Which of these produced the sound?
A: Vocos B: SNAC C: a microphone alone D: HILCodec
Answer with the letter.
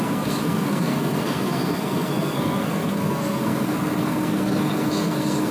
B